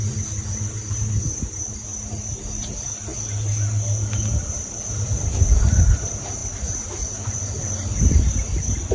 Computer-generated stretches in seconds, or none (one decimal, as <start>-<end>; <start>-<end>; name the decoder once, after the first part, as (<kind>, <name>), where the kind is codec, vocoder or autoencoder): 1.1-1.9 (vocoder, BigVGAN v2); 2.6-3.1; 4.3-8.9